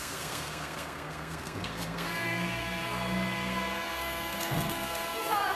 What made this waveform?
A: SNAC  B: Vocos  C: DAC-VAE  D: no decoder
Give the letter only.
A